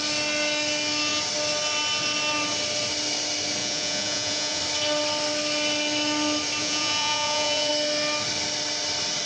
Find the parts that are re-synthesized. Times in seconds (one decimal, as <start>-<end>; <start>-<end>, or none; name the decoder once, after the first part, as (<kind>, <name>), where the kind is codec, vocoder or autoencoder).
3.6-4.6 (vocoder, Vocos); 6.6-7.7